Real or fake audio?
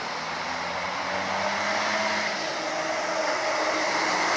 real